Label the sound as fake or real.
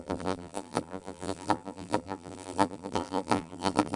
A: fake